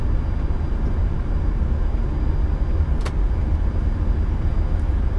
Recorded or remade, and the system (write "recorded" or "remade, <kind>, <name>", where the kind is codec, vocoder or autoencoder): recorded